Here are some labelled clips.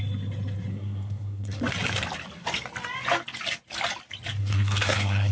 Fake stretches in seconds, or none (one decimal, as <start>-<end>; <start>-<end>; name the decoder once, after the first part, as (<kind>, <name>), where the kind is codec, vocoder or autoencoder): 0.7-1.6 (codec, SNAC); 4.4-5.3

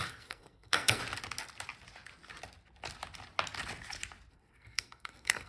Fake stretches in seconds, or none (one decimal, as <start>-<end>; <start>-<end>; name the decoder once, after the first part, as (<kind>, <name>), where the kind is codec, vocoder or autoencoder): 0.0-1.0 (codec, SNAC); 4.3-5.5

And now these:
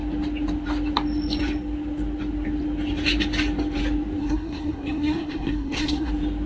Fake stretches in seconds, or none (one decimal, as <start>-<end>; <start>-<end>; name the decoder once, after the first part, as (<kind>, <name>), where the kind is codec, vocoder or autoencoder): 4.2-6.1 (codec, SNAC)